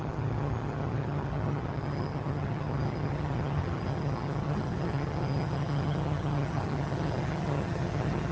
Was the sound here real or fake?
fake